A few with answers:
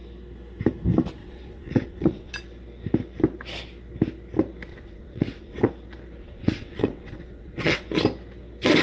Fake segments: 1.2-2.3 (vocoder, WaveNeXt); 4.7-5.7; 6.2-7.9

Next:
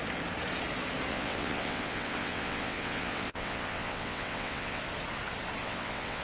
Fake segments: 1.1-4.8 (vocoder, WaveNeXt); 5.6-6.2

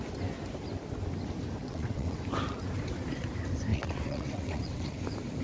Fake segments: 1.6-2.2 (vocoder, WaveNeXt); 3.7-5.0

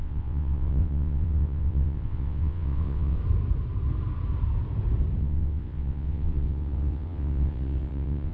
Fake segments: 0.0-3.2 (vocoder, WaveNeXt); 5.2-8.3

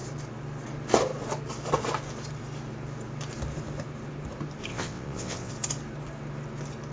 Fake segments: 4.7-5.5 (vocoder, WaveNeXt)

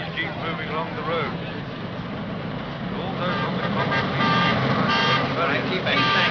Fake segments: none

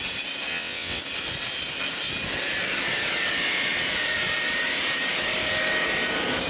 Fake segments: 0.5-1.0 (vocoder, WaveNeXt)